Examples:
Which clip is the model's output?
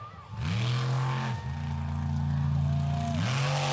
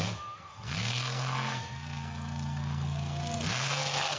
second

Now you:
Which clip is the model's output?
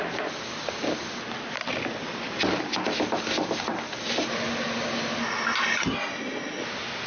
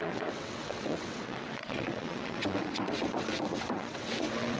second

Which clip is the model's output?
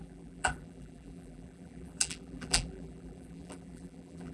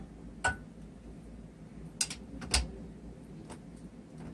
first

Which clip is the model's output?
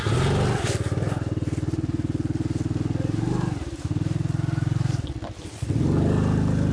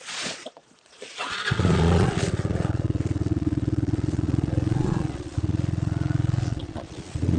second